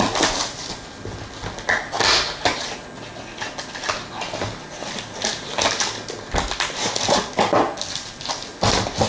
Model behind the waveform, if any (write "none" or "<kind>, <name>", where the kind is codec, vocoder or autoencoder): none